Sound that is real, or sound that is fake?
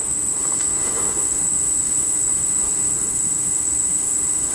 fake